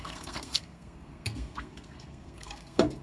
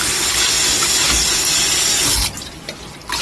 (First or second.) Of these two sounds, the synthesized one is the first